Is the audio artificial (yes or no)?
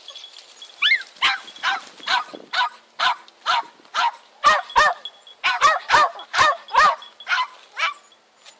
no